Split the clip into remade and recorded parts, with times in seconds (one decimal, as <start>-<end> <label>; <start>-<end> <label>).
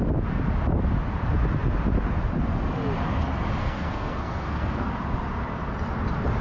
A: 0.0-3.6 recorded; 3.6-4.9 remade; 4.9-6.4 recorded